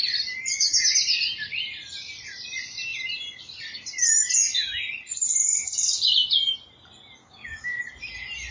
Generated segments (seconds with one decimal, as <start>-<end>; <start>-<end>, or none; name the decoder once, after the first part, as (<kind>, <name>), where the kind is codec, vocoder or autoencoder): 7.2-7.8 (codec, DAC)